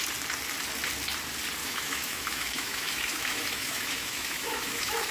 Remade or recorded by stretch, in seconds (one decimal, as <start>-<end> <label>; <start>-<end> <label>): 0.0-1.6 recorded; 1.6-5.1 remade